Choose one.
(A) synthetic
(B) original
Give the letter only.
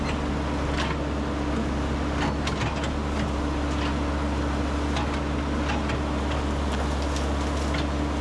B